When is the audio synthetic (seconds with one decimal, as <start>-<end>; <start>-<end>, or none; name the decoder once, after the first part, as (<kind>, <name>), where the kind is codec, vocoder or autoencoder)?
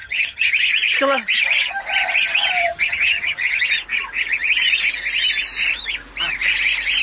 0.0-0.5 (vocoder, HiFi-GAN); 2.6-3.6